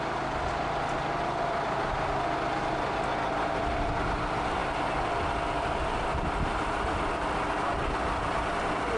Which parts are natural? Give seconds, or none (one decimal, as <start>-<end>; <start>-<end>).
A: 0.0-9.0